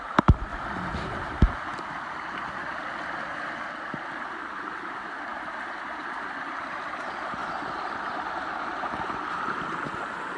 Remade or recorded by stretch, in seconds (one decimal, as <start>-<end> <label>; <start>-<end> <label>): 0.0-0.5 recorded; 0.5-3.7 remade; 3.7-10.4 recorded